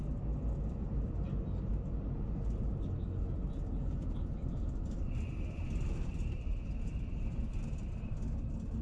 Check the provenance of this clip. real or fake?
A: real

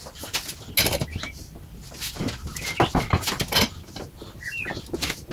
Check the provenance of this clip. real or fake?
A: real